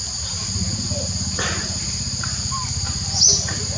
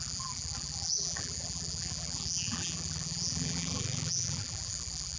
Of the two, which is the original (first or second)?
first